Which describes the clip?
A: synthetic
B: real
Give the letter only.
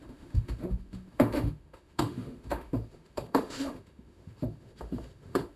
A